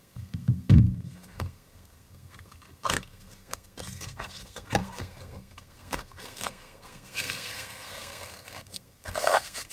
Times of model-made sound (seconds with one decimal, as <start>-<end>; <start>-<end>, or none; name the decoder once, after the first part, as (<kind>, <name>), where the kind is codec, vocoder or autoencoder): 0.0-9.7 (codec, SNAC)